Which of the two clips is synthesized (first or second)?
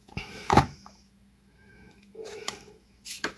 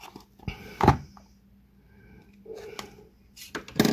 first